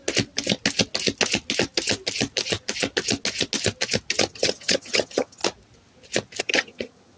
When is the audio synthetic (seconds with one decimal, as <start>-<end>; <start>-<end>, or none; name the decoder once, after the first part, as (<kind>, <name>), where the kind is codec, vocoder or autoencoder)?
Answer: 4.3-5.4 (vocoder, HiFi-GAN); 6.4-7.2